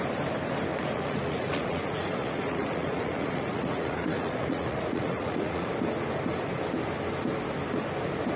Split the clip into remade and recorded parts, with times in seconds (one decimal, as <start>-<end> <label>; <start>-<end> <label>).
0.0-0.7 recorded; 0.7-5.7 remade; 5.7-8.4 recorded